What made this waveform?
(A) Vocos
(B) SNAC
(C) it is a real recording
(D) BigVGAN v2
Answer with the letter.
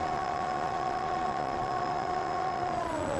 A